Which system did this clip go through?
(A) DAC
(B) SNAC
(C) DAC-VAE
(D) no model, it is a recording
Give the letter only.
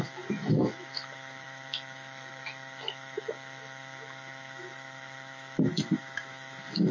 C